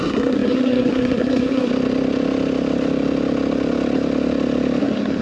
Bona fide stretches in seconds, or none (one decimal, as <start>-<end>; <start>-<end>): 1.7-4.8